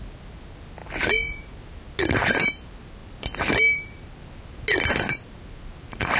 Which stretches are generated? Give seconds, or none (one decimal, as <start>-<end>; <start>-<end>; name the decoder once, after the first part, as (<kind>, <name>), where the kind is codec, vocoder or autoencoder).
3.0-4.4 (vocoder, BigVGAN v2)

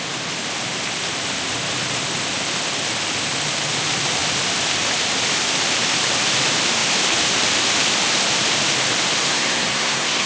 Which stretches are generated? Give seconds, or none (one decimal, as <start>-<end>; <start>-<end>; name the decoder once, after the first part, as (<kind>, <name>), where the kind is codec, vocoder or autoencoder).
9.2-10.3 (codec, SNAC)

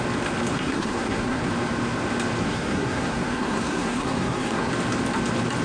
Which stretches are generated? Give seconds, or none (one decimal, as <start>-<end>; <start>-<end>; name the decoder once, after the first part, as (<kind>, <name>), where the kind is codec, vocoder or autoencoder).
0.5-1.5 (codec, SNAC); 2.4-4.7

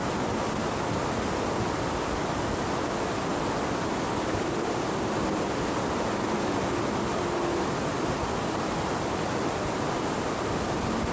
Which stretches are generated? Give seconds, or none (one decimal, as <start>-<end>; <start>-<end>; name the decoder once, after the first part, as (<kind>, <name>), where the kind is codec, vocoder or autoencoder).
none